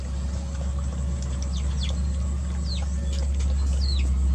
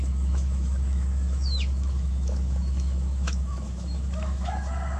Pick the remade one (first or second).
second